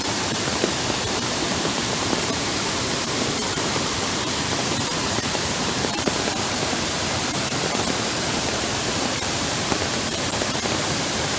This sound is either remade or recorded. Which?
remade